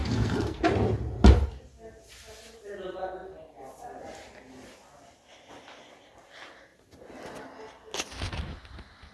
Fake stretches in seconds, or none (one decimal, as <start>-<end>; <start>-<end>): 0.0-0.6